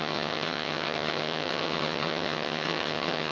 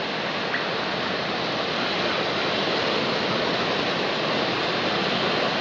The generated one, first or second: first